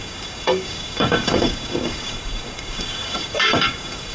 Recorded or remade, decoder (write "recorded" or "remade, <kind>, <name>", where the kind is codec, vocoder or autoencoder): remade, codec, DAC